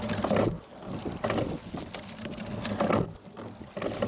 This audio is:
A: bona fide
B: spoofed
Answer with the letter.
A